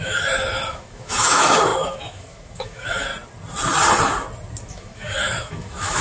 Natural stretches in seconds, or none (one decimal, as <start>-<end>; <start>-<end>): 3.1-4.7